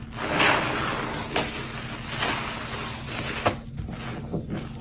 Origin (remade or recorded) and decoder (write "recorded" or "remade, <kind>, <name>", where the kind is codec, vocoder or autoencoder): recorded